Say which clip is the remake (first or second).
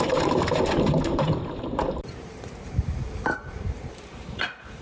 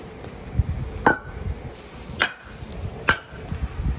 first